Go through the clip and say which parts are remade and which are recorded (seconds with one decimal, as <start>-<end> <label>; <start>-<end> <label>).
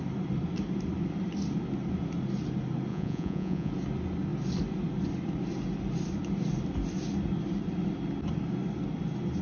0.0-2.9 recorded; 2.9-3.7 remade; 3.7-9.4 recorded